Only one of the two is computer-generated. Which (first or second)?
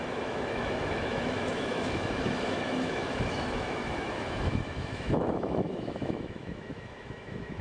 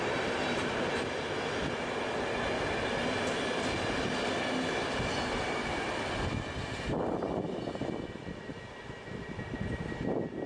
first